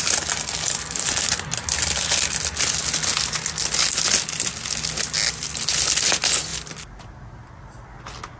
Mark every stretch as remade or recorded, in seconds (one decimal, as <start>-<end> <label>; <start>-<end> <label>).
0.0-8.4 recorded